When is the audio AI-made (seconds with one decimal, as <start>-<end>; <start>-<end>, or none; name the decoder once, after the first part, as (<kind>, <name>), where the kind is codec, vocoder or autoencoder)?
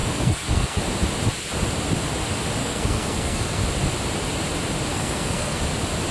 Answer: 0.0-0.8 (codec, SNAC); 2.6-3.6; 4.9-5.6